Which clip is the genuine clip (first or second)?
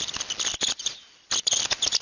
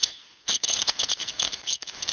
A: first